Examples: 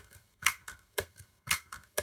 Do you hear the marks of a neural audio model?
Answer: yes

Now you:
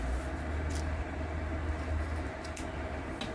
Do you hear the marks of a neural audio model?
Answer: no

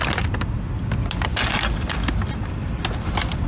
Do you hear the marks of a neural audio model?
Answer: no